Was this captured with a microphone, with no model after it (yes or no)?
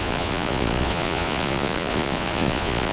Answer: no